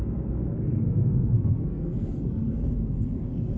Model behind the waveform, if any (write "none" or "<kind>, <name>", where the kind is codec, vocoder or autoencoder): codec, SNAC